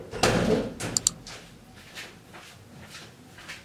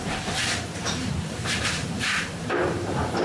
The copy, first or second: second